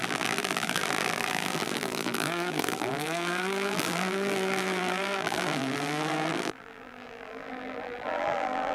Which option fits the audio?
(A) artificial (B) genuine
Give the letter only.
A